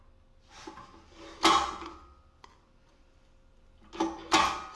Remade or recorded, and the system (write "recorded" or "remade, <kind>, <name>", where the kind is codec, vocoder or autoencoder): recorded